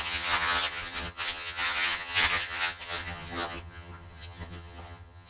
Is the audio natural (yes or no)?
no